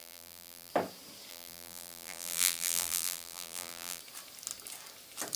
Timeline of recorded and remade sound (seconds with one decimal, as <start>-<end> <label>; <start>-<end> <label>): 0.0-0.7 remade; 0.7-1.3 recorded; 1.3-4.0 remade; 4.0-5.4 recorded